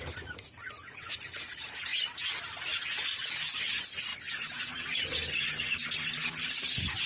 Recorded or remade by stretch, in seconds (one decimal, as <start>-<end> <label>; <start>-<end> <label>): 0.0-7.0 recorded